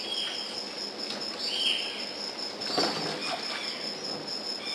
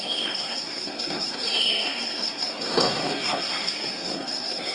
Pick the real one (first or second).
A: first